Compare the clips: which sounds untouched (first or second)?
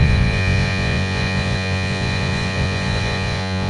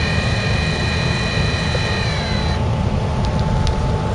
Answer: second